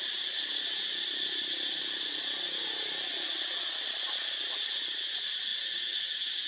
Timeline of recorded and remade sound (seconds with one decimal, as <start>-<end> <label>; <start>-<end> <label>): 0.0-6.5 recorded